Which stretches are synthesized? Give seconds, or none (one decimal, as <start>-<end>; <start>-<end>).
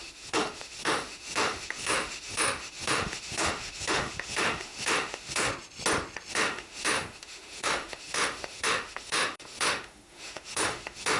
0.0-5.5; 6.3-11.2